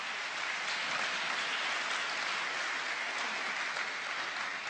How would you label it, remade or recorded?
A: recorded